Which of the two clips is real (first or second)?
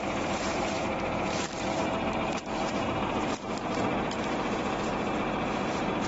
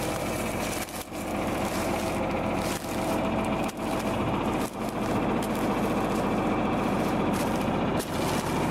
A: second